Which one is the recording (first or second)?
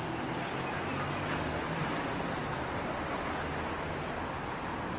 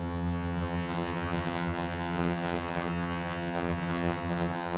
first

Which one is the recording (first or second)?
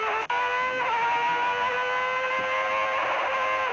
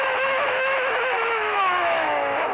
first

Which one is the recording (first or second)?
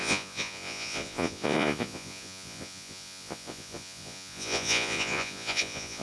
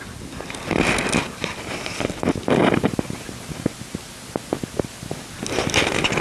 second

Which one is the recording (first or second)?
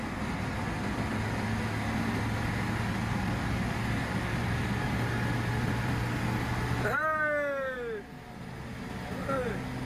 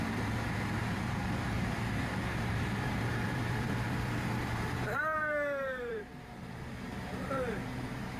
first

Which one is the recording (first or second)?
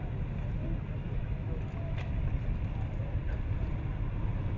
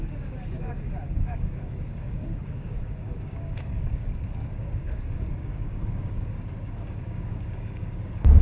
first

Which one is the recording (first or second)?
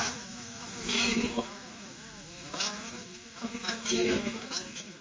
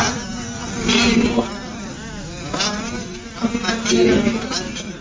second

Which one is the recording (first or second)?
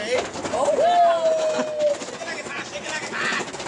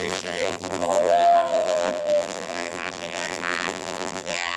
first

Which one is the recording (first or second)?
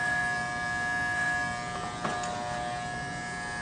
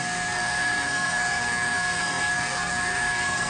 first